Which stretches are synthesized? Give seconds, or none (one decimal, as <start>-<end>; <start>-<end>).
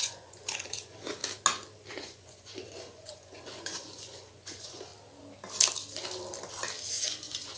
0.0-1.2; 1.9-4.9; 6.9-7.6